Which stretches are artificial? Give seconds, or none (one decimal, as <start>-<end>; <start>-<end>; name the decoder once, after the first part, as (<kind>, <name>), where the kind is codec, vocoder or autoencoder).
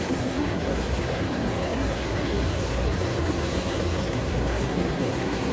0.0-5.5 (codec, SNAC)